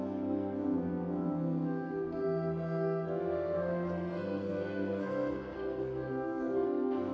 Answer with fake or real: fake